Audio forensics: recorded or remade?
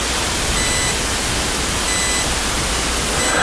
recorded